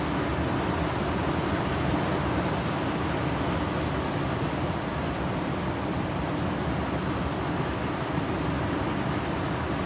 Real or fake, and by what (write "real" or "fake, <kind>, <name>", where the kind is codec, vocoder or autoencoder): real